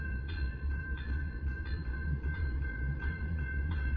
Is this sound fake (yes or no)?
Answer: yes